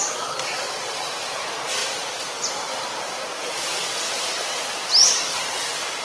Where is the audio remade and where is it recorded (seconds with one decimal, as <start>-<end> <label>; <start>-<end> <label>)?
0.0-6.0 recorded